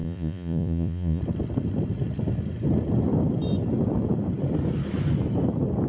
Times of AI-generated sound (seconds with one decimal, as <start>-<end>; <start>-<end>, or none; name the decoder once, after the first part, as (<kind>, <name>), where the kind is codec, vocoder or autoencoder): 0.0-1.2 (vocoder, Vocos)